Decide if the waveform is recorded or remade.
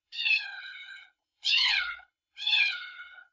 remade